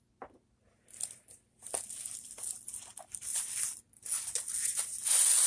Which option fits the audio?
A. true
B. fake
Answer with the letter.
A